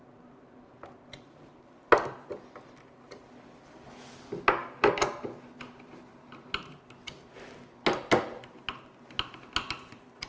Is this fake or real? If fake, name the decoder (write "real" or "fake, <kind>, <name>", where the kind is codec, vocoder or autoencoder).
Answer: real